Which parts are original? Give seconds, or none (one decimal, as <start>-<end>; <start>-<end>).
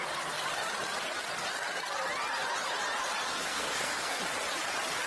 0.0-3.3; 4.2-5.1